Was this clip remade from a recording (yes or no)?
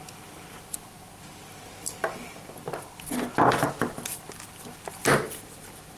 no